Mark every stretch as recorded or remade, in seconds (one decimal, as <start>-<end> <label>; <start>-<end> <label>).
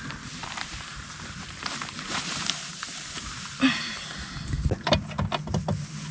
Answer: 0.0-0.4 recorded; 0.4-4.1 remade; 4.1-6.1 recorded